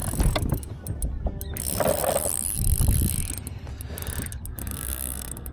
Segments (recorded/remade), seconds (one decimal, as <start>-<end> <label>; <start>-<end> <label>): 0.0-4.6 recorded; 4.6-5.5 remade